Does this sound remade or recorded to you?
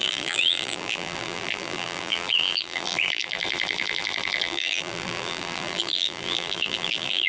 remade